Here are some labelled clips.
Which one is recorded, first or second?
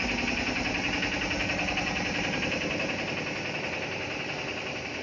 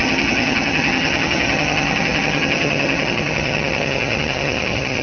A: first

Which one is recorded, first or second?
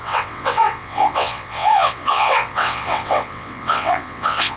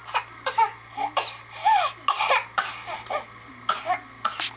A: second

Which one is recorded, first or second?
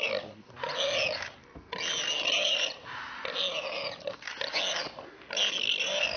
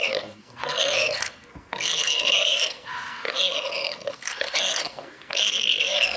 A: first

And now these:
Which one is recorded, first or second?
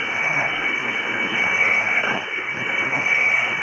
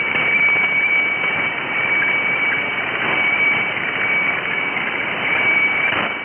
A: second